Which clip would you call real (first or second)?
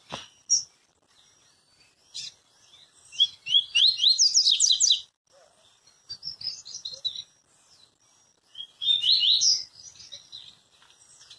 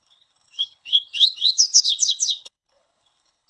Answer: first